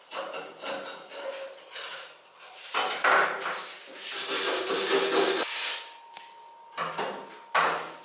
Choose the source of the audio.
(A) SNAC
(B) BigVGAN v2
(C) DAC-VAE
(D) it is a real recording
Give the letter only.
D